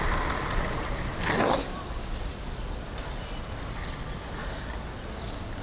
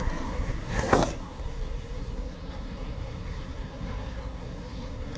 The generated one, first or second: second